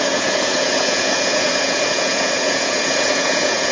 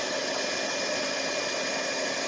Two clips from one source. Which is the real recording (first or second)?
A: second